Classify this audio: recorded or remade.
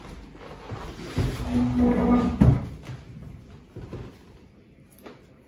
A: recorded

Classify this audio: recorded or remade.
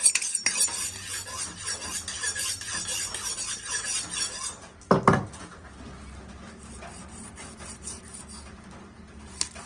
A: recorded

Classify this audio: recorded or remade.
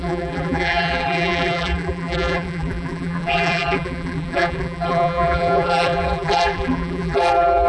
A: remade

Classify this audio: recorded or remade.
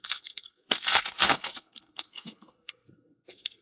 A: remade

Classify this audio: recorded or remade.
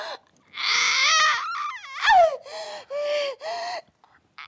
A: recorded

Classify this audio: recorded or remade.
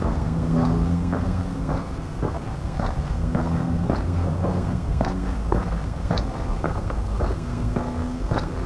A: remade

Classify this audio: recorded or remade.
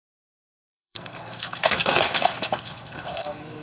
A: remade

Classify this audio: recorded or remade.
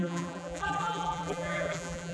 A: remade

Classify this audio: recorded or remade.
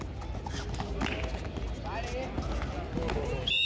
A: recorded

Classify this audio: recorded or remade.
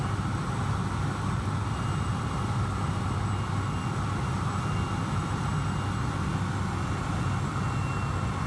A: recorded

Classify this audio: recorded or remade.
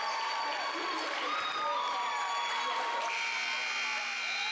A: recorded